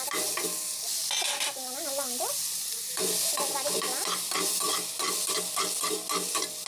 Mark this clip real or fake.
real